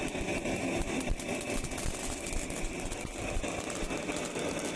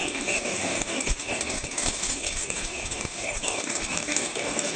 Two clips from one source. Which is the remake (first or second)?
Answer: second